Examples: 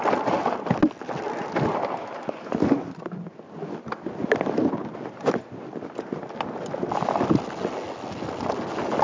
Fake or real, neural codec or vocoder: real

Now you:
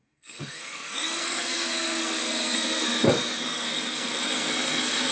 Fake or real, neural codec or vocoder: fake, codec, SNAC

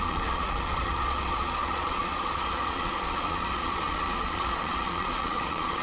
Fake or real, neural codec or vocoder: fake, vocoder, Vocos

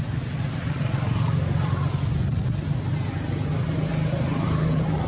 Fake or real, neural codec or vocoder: real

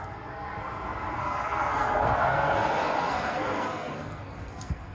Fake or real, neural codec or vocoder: fake, codec, SNAC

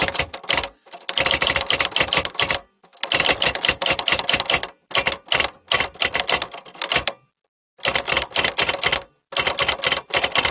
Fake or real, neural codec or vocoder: real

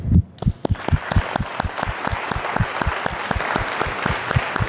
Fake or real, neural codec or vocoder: real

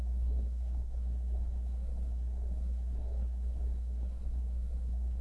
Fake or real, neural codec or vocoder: fake, codec, SNAC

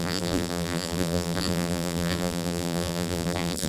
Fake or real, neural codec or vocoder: fake, vocoder, BigVGAN v2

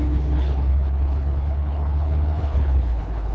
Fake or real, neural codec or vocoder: fake, codec, HILCodec